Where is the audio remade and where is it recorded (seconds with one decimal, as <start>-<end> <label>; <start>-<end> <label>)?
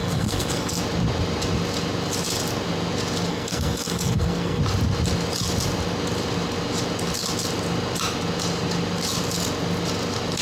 0.0-0.8 remade; 0.8-3.3 recorded; 3.3-4.6 remade; 4.6-10.4 recorded